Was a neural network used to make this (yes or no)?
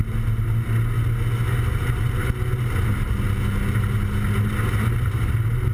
no